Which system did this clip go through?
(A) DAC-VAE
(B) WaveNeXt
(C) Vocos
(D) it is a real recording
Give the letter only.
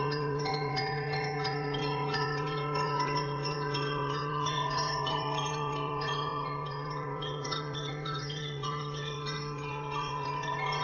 B